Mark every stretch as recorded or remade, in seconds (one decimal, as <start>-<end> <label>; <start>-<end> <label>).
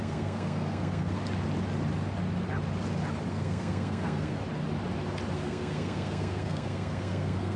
0.0-1.2 remade; 1.2-3.3 recorded; 3.3-4.4 remade; 4.4-5.3 recorded; 5.3-7.6 remade